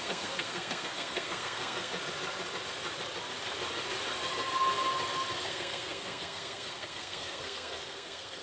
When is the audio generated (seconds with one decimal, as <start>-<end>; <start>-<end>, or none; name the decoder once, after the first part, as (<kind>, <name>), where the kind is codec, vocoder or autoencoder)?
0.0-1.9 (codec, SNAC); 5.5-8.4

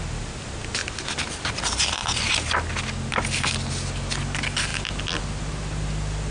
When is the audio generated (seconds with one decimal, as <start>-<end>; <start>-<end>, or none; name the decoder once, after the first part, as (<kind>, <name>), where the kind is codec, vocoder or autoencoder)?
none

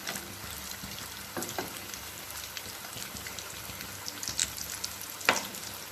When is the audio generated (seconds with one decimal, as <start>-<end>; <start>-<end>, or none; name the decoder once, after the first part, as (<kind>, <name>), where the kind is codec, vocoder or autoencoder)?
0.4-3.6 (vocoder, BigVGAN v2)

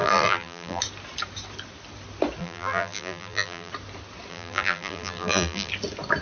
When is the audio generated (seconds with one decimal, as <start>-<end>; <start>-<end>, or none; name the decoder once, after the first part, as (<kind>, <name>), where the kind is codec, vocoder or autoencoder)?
0.0-0.8 (vocoder, BigVGAN v2); 2.4-3.7; 4.3-5.7

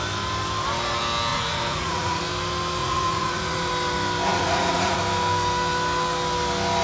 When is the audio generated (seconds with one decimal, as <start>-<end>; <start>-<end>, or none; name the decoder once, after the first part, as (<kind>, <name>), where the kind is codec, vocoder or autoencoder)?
1.3-2.2 (vocoder, Vocos); 2.8-3.7; 4.3-5.0

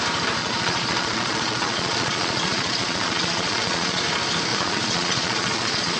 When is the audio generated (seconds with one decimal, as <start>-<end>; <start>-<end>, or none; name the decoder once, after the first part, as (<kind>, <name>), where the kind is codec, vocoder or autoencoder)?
0.4-4.0 (vocoder, Vocos); 4.5-6.0

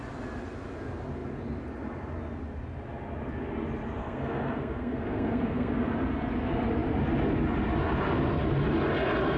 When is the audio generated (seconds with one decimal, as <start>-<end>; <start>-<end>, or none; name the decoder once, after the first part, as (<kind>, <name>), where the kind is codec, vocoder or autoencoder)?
4.0-5.7 (codec, SNAC)

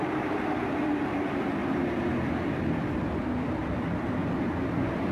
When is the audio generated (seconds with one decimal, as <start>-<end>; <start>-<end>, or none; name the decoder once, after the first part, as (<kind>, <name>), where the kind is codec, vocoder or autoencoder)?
0.0-1.6 (vocoder, BigVGAN v2); 2.6-5.1